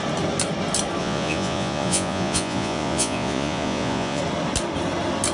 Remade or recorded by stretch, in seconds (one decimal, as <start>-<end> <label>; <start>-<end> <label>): 0.0-1.0 recorded; 1.0-4.2 remade; 4.2-5.3 recorded